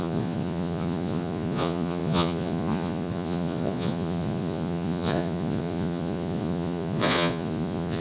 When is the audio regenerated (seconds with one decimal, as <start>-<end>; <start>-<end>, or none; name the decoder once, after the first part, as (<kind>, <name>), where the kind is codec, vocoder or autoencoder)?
0.0-8.0 (vocoder, Vocos)